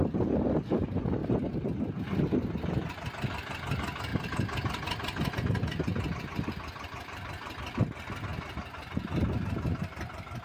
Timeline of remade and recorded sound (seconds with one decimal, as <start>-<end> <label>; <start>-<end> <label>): 0.0-10.4 recorded